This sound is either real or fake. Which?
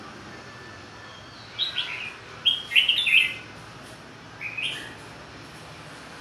real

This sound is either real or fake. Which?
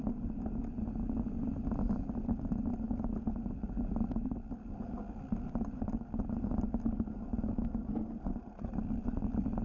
real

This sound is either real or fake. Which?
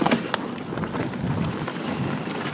fake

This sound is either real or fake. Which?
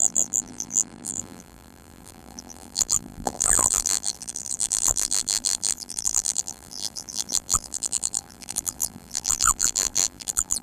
fake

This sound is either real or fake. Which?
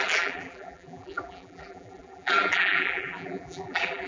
fake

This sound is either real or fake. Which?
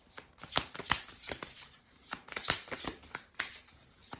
fake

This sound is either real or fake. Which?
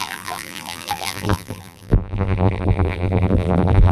fake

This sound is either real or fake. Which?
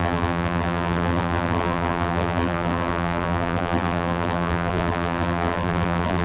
fake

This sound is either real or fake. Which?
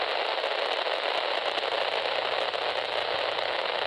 real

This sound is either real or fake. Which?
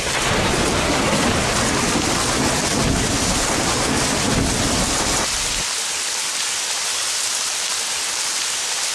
real